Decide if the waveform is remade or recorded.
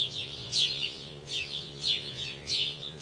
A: remade